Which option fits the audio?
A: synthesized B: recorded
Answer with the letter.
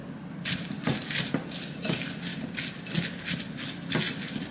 B